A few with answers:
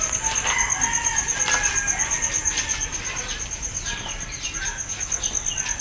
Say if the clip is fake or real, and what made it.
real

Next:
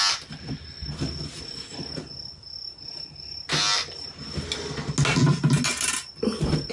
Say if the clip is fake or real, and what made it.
real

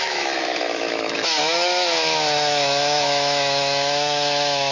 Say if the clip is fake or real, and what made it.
fake, autoencoder, DAC-VAE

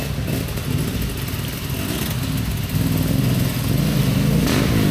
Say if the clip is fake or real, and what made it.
real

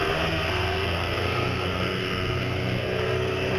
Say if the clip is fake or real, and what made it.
fake, codec, SNAC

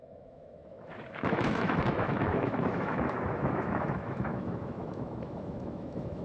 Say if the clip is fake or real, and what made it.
fake, autoencoder, DAC-VAE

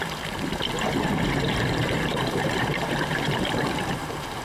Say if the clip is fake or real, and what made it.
fake, vocoder, BigVGAN v2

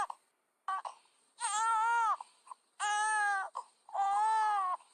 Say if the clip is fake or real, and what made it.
real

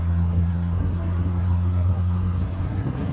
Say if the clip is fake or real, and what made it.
fake, codec, SNAC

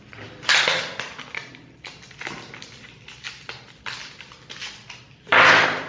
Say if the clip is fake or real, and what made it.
real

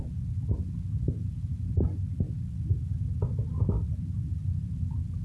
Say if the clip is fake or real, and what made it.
real